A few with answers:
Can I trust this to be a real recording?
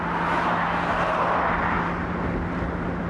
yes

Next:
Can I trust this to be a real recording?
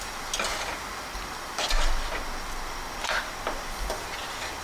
yes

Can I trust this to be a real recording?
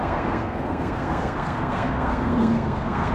no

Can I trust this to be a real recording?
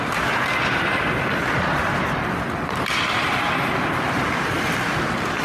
yes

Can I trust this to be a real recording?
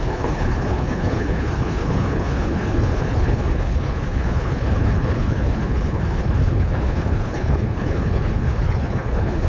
no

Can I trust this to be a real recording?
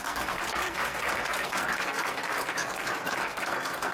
no